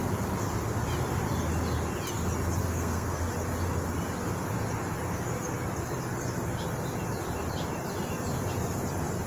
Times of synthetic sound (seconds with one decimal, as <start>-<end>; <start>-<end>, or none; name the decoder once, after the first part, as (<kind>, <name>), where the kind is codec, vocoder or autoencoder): 2.6-3.2 (codec, SNAC)